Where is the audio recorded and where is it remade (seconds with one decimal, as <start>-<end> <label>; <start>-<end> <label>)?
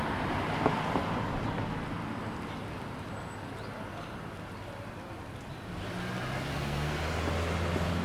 0.0-6.5 recorded; 6.5-7.0 remade; 7.0-8.0 recorded